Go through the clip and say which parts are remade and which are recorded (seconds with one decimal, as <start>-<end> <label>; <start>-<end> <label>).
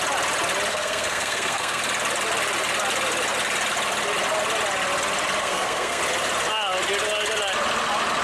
0.0-0.7 recorded; 0.7-1.8 remade; 1.8-5.4 recorded; 5.4-6.0 remade; 6.0-8.2 recorded